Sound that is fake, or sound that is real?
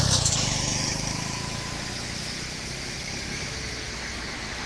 fake